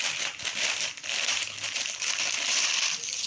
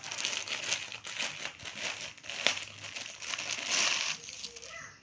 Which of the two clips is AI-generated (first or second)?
first